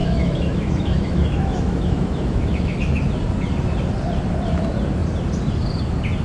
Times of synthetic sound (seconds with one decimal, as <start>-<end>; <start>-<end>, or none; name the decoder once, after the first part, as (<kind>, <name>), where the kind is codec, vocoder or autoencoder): 0.0-3.0 (autoencoder, DAC-VAE)